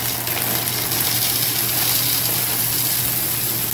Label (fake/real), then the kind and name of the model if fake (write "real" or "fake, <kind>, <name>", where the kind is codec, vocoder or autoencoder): real